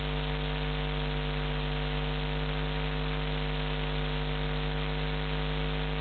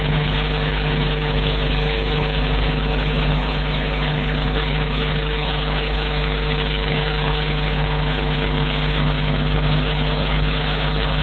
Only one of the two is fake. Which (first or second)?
second